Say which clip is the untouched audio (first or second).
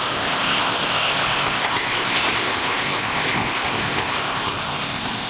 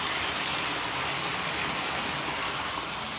second